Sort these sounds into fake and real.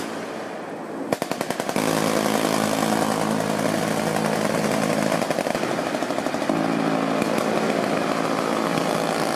real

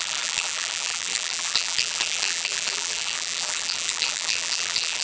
fake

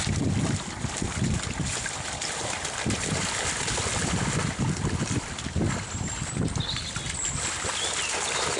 fake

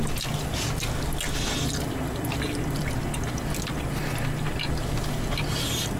real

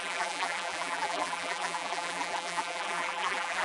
fake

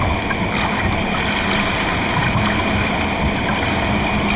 real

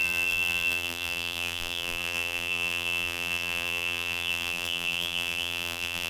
fake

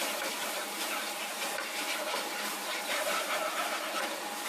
fake